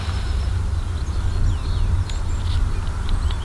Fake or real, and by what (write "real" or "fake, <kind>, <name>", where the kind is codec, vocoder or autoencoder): real